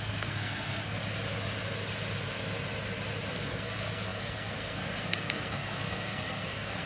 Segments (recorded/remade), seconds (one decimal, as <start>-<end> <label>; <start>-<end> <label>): 0.0-1.0 remade; 1.0-3.3 recorded; 3.3-6.9 remade